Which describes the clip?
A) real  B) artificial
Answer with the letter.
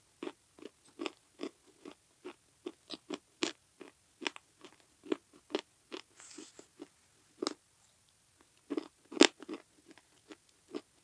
A